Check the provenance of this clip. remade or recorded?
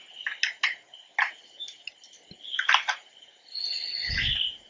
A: recorded